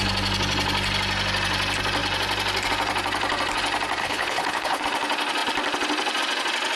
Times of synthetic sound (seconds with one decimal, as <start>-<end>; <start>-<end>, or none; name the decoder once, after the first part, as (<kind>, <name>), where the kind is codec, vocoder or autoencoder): 4.0-4.8 (codec, HILCodec)